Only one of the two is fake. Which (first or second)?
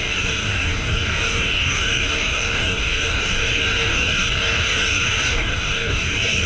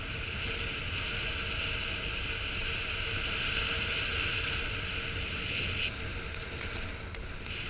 first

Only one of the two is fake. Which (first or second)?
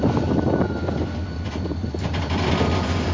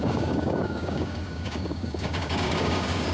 second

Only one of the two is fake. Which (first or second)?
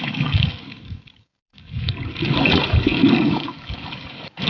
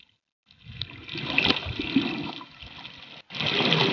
first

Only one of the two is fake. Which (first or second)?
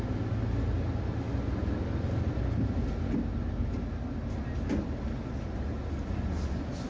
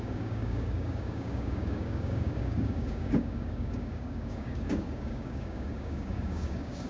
second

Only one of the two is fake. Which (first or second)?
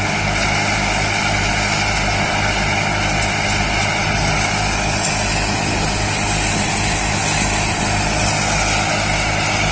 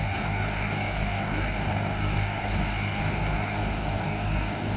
second